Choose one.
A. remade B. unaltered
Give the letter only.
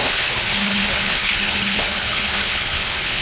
A